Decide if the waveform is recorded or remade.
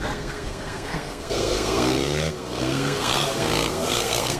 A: remade